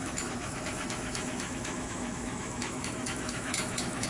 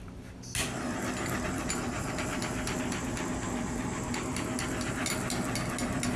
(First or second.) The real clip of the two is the second